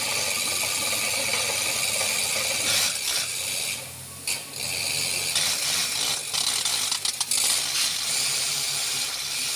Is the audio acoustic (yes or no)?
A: yes